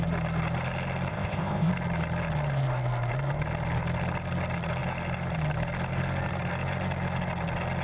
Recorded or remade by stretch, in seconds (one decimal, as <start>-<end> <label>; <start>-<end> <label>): 0.0-1.1 recorded; 1.1-1.7 remade; 1.7-7.8 recorded